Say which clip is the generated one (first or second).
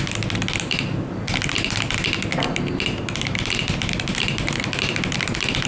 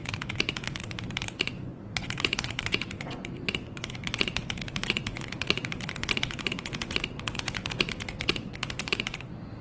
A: second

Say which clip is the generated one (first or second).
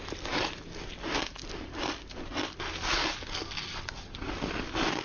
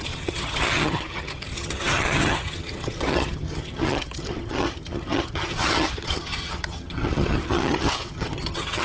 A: second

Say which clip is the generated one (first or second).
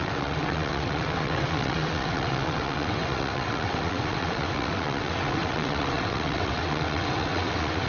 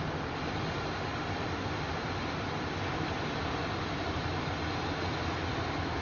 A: first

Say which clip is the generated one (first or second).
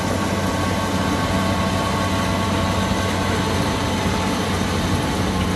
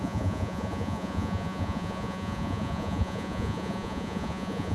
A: second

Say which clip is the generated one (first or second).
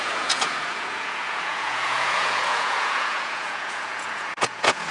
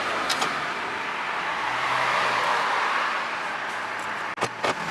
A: first